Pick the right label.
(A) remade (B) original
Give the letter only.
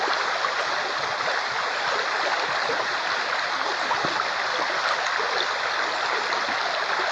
B